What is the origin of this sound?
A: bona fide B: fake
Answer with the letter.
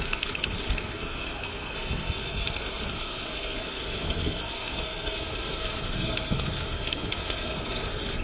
B